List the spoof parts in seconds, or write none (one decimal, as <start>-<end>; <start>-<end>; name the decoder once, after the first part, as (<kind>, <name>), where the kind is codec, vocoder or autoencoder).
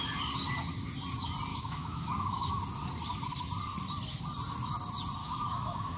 1.5-2.5 (autoencoder, DAC-VAE); 5.2-6.0